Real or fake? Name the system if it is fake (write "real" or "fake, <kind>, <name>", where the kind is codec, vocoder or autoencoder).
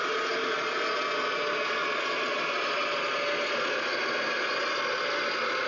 real